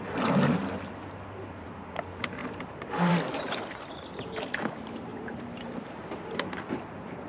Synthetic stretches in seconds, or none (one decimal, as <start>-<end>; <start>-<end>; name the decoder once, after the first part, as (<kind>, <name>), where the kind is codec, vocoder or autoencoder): 2.4-3.1 (vocoder, BigVGAN v2); 5.1-6.0